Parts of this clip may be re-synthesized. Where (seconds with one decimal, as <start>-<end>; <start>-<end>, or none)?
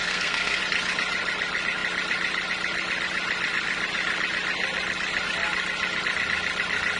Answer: 0.0-0.6